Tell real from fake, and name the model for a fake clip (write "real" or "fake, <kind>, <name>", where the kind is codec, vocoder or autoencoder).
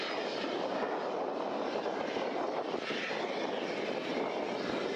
real